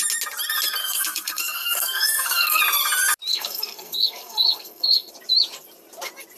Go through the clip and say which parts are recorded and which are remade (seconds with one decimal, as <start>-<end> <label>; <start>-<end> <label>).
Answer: 0.0-0.8 recorded; 0.8-2.6 remade; 2.6-3.3 recorded; 3.3-5.1 remade; 5.1-6.4 recorded